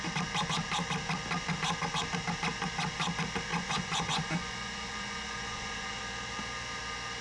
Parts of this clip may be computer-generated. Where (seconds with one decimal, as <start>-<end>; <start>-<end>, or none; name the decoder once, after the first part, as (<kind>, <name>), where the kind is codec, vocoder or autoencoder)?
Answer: 3.5-6.0 (vocoder, Vocos)